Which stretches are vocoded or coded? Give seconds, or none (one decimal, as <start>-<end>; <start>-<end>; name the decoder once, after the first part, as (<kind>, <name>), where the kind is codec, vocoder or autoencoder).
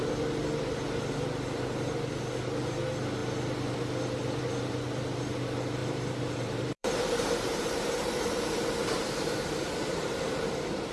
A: 5.8-10.9 (vocoder, BigVGAN v2)